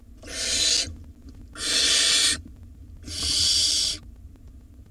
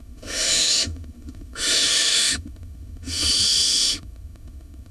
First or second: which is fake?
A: second